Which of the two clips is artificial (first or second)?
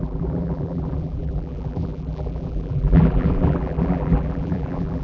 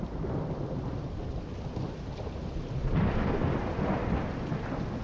first